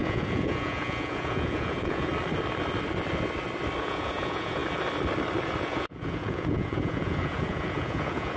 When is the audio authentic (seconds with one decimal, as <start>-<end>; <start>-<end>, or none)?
2.1-3.8; 4.6-5.6